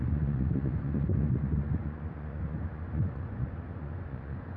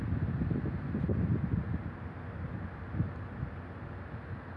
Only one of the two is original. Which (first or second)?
second